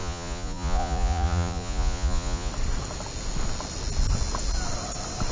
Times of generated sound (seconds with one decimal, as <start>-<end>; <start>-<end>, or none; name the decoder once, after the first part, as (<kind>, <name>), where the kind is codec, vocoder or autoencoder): 0.0-2.5 (vocoder, Vocos)

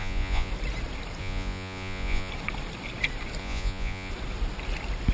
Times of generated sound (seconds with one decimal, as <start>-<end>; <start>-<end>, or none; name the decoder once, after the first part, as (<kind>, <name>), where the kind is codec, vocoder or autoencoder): 0.0-0.5 (vocoder, Vocos); 1.2-2.3; 3.4-4.1

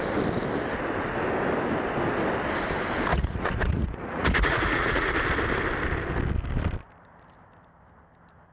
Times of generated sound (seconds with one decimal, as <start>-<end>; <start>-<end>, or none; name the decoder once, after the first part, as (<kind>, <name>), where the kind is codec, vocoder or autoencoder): 3.1-5.1 (vocoder, Vocos)

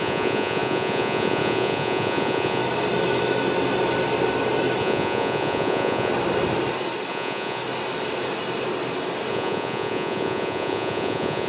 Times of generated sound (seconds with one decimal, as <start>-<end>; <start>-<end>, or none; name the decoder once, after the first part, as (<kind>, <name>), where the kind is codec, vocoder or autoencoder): 0.0-2.6 (vocoder, Vocos); 4.8-6.1; 7.1-7.6; 9.3-11.5

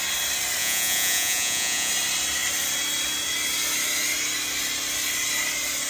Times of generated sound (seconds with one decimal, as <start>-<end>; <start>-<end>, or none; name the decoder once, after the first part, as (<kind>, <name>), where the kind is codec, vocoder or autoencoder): 0.6-1.9 (vocoder, Vocos)